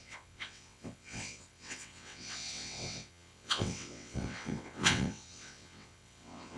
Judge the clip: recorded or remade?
remade